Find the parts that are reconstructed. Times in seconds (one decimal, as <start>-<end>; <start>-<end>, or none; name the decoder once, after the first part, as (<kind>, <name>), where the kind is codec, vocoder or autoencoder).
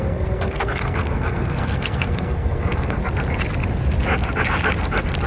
0.0-3.0 (codec, SNAC)